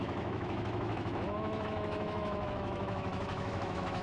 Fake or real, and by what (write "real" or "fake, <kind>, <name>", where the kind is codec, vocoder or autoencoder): fake, autoencoder, DAC-VAE